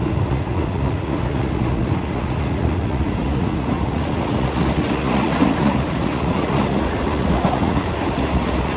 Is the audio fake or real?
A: fake